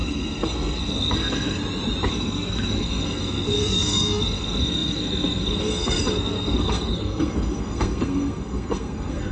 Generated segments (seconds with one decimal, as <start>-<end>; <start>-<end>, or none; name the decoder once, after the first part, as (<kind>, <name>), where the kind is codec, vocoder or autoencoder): 0.0-1.6 (codec, SNAC); 2.1-9.3